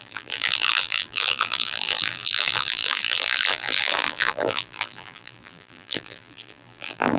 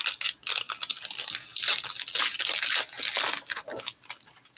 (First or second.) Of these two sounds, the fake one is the first